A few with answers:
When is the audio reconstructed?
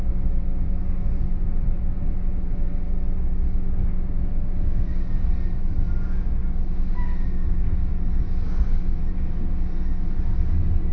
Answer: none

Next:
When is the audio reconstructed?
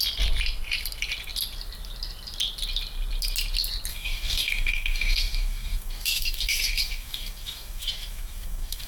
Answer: 3.9-8.9 (codec, DAC)